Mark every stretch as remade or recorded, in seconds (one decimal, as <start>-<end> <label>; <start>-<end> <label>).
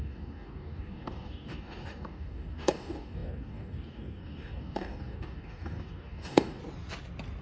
0.0-6.6 remade; 6.6-7.4 recorded